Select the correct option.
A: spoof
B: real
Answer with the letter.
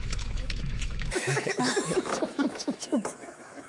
A